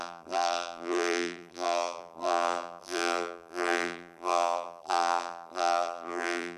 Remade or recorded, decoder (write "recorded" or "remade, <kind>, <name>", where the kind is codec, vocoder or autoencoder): remade, vocoder, BigVGAN v2